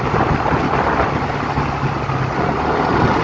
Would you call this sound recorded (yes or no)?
yes